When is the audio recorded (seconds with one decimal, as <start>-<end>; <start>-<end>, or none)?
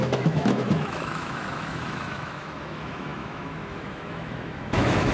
none